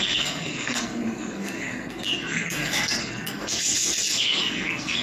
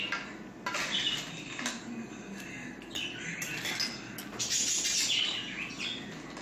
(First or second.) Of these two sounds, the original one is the second